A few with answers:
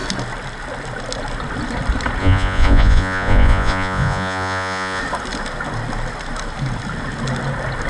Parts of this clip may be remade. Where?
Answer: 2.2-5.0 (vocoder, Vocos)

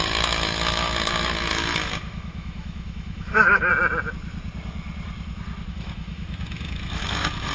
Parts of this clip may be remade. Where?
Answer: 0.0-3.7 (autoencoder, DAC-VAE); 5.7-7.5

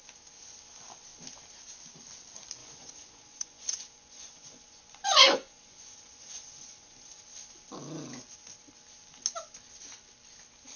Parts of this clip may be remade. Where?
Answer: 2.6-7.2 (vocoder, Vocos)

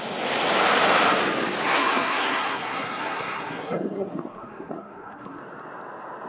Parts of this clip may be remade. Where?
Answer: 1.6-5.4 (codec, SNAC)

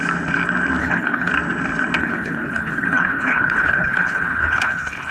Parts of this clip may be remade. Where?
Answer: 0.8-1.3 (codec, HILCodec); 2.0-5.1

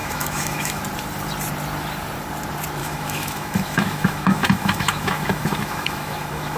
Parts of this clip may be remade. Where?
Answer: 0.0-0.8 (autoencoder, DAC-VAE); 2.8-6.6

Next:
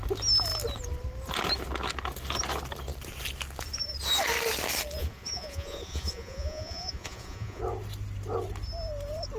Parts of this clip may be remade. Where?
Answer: 5.0-7.6 (vocoder, Vocos)

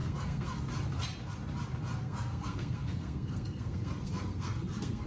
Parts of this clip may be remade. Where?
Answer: 0.0-0.7 (codec, SNAC); 2.0-5.1